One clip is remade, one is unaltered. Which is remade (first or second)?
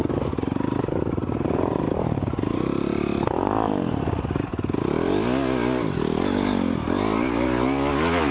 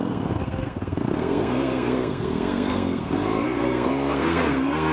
second